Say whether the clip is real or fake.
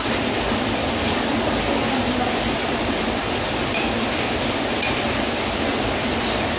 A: real